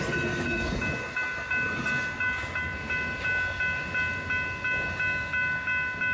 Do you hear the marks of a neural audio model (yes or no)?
no